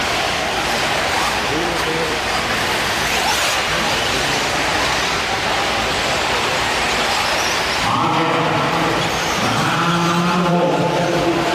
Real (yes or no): no